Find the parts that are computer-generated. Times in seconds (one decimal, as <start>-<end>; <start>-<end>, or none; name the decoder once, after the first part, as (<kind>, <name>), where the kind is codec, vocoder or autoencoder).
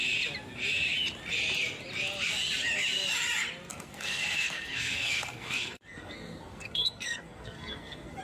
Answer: 3.7-8.2 (codec, SNAC)